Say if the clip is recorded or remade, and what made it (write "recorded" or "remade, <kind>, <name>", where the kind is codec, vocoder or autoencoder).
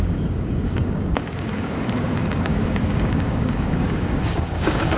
remade, codec, DAC